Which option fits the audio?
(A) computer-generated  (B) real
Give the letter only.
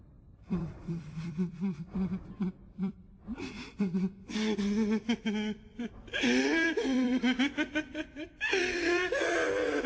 A